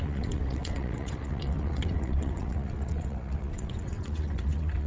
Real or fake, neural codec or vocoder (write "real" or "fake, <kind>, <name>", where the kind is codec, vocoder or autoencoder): fake, vocoder, WaveNeXt